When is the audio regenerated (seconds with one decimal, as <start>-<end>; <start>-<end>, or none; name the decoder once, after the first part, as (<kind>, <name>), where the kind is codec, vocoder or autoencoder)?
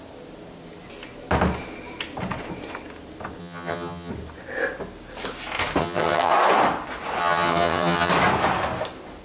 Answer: 3.4-4.1 (vocoder, HiFi-GAN); 5.8-6.3; 7.2-8.1